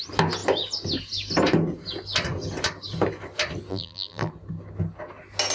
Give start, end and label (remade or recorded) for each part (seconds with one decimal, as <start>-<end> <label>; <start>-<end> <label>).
0.0-3.7 recorded; 3.7-4.3 remade; 4.3-5.5 recorded